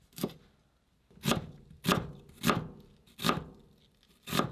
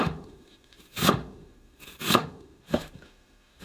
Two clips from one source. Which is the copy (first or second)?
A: second